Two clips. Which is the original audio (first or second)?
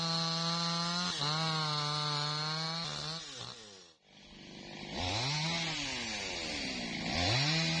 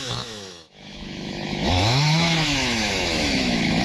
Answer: first